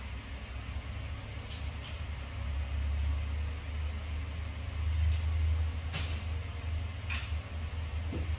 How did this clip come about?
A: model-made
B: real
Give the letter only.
B